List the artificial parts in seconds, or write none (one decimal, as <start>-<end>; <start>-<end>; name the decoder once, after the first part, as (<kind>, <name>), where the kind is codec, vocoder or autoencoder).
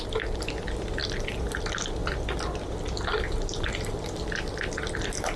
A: none